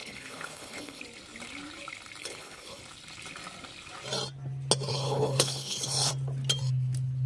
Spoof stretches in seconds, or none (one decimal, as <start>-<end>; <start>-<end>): 0.0-1.0; 2.2-2.8; 4.9-6.1